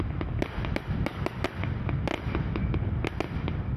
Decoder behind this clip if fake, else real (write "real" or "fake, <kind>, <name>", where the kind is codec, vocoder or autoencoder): real